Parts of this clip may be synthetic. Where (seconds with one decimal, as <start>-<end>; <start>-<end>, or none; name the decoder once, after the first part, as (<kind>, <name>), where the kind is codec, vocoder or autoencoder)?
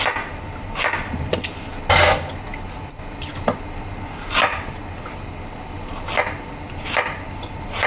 none